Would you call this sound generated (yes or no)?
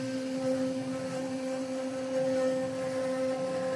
no